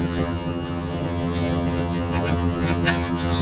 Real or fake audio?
fake